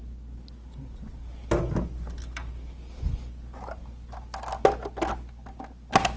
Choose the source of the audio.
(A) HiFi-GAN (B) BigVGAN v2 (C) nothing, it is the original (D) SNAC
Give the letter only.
C